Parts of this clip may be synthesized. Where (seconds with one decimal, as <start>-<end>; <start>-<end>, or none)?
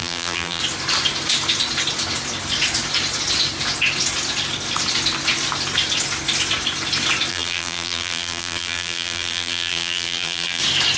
0.0-0.6; 7.3-10.6